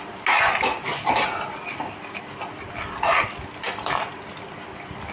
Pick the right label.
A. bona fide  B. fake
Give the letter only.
A